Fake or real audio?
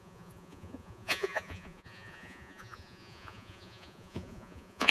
fake